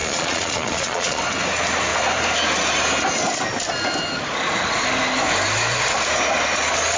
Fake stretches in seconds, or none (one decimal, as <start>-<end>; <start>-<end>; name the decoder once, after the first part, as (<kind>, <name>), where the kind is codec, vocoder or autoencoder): 0.0-1.2 (vocoder, Vocos)